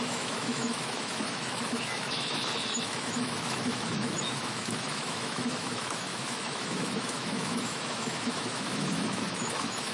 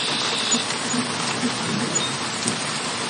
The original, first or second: second